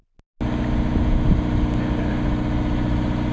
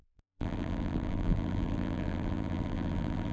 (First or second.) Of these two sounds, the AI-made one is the second